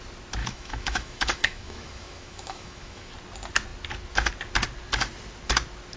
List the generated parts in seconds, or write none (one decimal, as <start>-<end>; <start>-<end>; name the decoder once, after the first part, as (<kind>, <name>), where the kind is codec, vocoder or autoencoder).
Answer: 0.4-3.1 (autoencoder, DAC-VAE)